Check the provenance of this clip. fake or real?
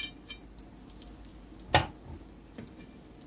real